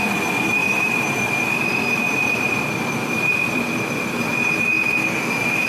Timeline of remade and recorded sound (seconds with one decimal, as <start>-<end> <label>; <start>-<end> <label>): 0.0-0.6 recorded; 0.6-4.0 remade; 4.0-5.7 recorded